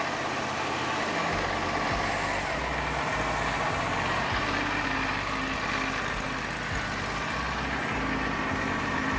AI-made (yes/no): no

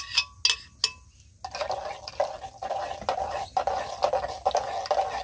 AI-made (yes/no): no